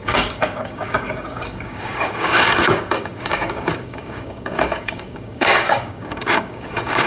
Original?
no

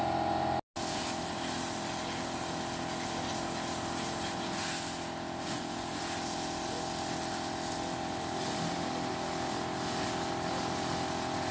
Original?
yes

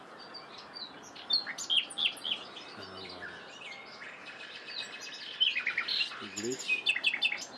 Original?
yes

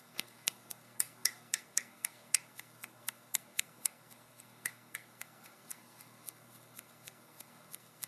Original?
no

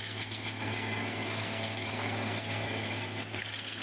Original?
no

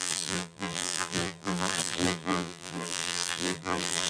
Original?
no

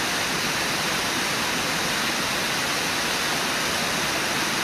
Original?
yes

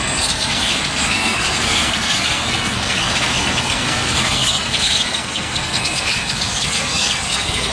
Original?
no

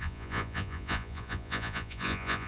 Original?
no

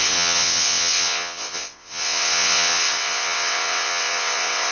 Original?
no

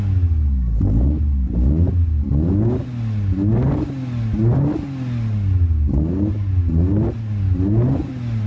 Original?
yes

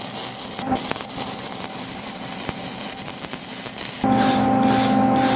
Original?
yes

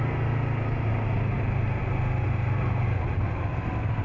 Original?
yes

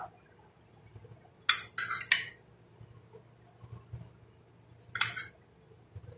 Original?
yes